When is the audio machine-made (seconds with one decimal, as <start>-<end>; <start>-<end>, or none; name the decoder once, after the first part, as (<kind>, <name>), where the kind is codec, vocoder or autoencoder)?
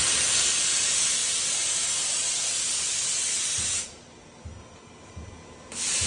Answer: none